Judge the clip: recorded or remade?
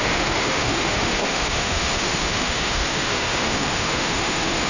remade